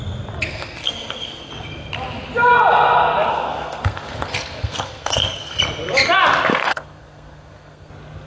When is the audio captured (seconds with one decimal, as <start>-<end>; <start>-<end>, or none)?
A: 0.0-0.5; 1.5-3.3; 5.6-6.5; 7.9-8.3